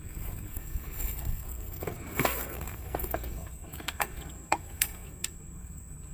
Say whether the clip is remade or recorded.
remade